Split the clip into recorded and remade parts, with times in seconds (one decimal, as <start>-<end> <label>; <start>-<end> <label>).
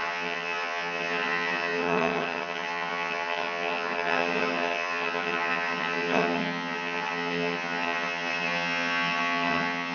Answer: 0.0-9.9 remade